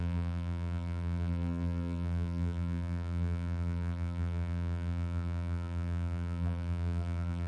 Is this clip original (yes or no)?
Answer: no